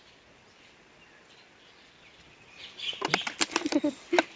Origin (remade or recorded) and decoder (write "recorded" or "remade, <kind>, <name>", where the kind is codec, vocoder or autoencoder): recorded